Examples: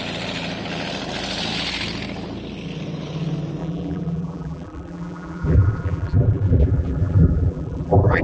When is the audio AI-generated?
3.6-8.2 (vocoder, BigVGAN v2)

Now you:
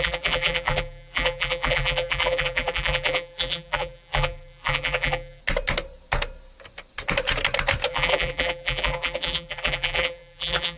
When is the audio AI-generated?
0.0-5.4 (vocoder, BigVGAN v2); 7.9-10.8

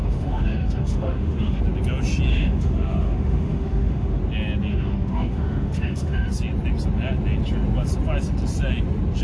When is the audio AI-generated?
0.0-1.6 (autoencoder, DAC-VAE); 2.3-4.2; 4.7-6.3

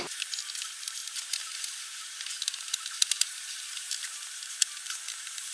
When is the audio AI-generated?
none

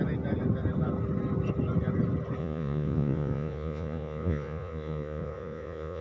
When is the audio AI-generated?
2.4-6.0 (vocoder, Vocos)

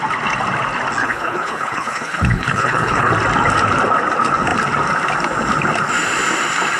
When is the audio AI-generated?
1.0-3.1 (codec, HILCodec)

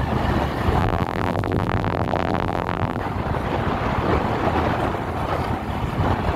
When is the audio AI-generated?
0.8-3.0 (vocoder, BigVGAN v2)

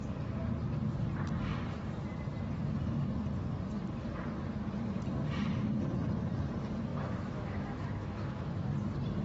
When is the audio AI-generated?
6.9-8.7 (autoencoder, DAC-VAE)